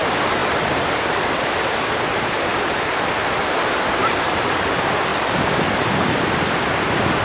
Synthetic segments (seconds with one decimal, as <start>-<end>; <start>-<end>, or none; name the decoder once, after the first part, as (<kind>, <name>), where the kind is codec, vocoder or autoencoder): 0.4-1.3 (vocoder, BigVGAN v2); 2.5-3.1; 5.1-5.6